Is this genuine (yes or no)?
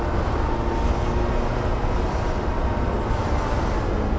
yes